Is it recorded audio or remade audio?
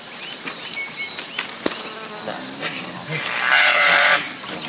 recorded